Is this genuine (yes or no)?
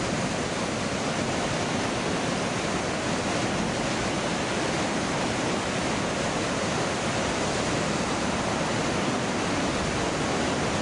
yes